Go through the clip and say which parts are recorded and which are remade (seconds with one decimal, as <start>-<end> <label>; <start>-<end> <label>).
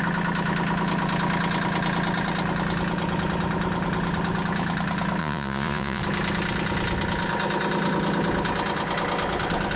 0.0-5.2 recorded; 5.2-6.0 remade; 6.0-9.8 recorded